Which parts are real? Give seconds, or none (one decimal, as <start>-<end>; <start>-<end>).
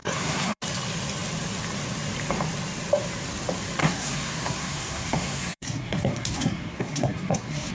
0.6-3.8